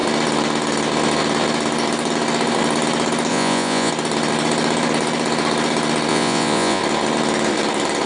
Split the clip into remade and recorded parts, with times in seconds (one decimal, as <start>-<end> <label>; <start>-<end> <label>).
0.0-3.3 recorded; 3.3-3.9 remade; 3.9-6.1 recorded; 6.1-6.8 remade; 6.8-8.1 recorded